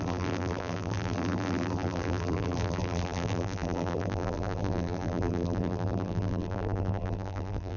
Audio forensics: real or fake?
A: fake